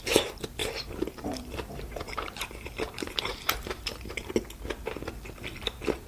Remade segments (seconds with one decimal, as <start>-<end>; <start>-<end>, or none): 0.6-4.3

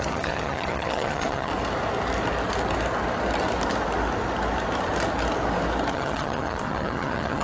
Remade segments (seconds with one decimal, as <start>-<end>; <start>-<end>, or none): 0.0-1.5; 5.9-7.4

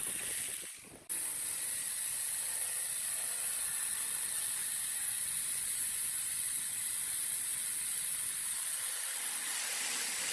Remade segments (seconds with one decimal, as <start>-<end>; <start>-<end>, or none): 4.6-6.7

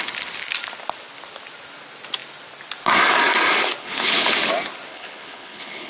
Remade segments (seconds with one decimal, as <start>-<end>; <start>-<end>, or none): 3.8-4.5; 4.9-5.9